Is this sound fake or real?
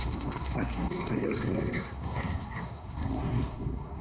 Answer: fake